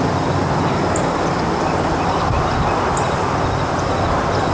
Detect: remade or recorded recorded